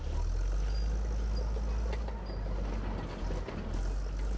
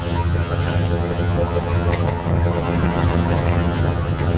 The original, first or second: first